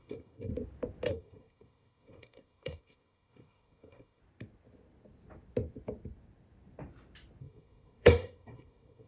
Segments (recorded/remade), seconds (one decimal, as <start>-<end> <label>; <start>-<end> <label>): 0.0-0.5 remade; 0.5-1.1 recorded; 1.1-4.2 remade; 4.2-7.4 recorded; 7.4-9.1 remade